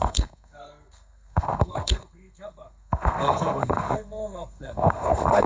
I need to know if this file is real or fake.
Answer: fake